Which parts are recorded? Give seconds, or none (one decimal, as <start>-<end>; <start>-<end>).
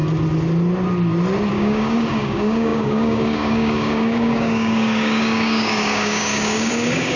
0.0-1.5